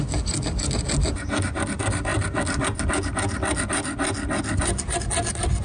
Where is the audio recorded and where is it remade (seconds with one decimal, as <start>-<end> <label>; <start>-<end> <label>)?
0.0-5.6 recorded